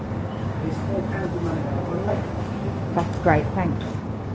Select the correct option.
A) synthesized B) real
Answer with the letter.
A